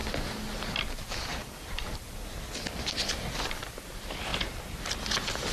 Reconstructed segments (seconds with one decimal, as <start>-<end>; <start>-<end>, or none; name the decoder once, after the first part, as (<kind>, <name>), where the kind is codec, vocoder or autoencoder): 1.4-2.5 (vocoder, BigVGAN v2); 4.3-4.9